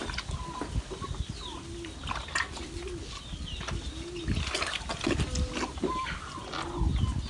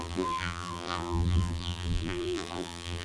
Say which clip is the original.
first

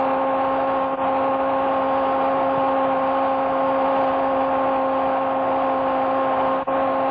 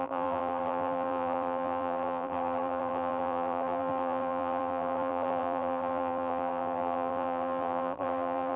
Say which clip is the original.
first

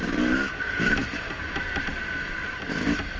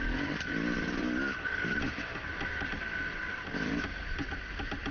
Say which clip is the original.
second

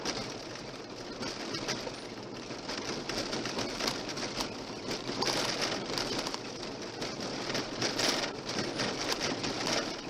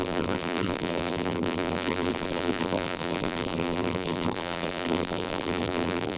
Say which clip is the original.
first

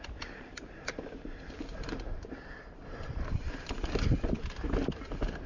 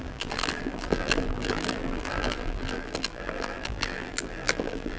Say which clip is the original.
first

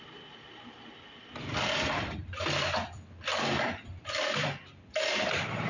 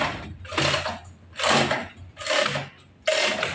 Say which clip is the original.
second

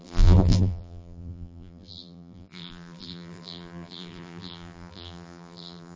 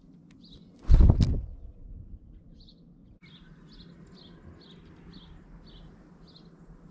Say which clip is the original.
second